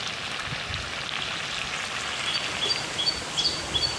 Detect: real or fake real